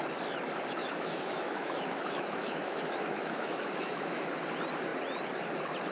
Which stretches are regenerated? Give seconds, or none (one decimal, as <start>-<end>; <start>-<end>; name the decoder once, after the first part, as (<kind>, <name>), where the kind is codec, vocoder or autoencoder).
0.8-4.3 (autoencoder, DAC-VAE)